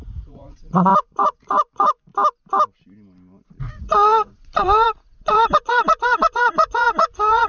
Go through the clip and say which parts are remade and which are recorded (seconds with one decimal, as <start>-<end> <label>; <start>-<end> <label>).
0.0-2.1 remade; 2.1-3.6 recorded; 3.6-7.5 remade